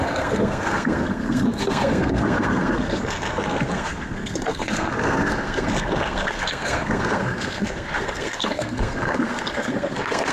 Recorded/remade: remade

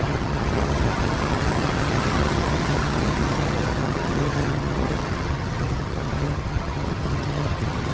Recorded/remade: remade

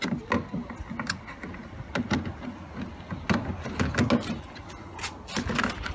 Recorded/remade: recorded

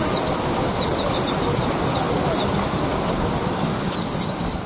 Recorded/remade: recorded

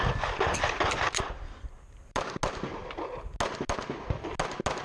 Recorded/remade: recorded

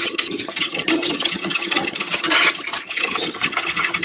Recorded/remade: remade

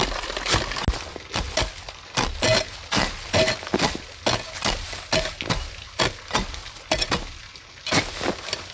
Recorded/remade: recorded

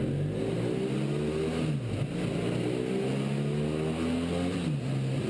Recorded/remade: recorded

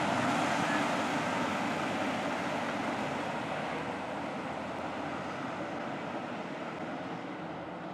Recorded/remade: recorded